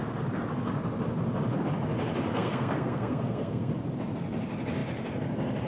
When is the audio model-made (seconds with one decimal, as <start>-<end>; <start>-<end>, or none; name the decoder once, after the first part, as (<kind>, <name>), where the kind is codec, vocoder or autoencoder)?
2.3-3.7 (codec, SNAC)